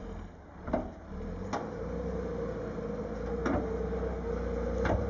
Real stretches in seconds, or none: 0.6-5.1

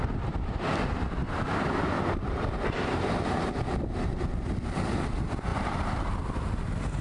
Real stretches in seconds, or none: 0.0-1.2; 4.2-5.5; 6.1-7.0

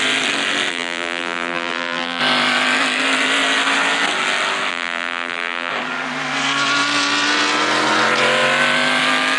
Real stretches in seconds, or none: 0.0-0.7; 2.2-4.7; 5.7-9.4

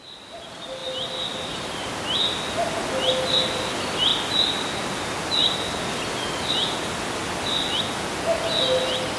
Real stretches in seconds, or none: 0.0-9.2